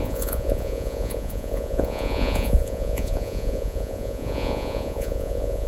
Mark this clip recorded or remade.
remade